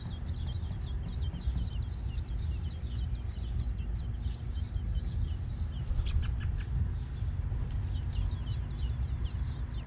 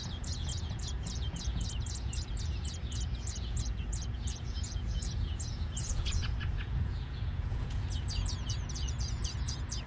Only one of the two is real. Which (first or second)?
first